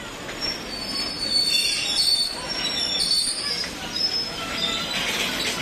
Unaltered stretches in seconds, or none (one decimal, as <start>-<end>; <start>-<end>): 0.0-2.1; 3.5-5.6